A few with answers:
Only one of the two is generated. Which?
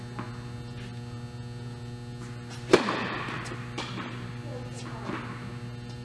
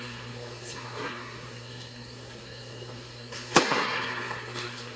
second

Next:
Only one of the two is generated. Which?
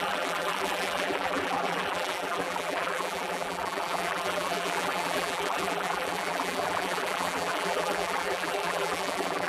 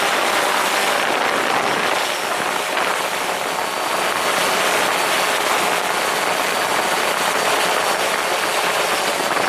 first